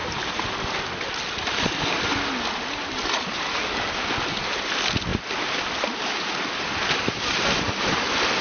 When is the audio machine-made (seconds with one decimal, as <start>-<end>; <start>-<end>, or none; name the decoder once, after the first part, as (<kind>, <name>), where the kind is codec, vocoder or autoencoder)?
none